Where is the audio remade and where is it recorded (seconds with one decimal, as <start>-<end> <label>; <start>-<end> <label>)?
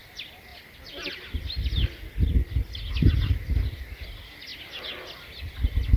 0.0-6.0 recorded